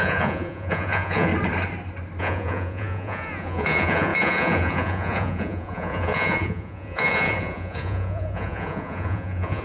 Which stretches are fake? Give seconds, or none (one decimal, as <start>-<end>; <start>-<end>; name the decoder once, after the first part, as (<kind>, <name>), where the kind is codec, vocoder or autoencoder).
0.0-1.3 (vocoder, Vocos); 2.2-9.6